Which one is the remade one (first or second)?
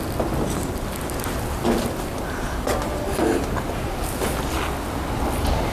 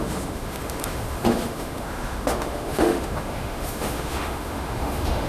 second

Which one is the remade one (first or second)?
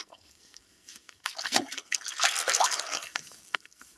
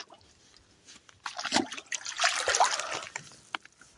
first